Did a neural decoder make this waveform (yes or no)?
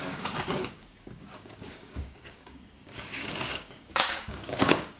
yes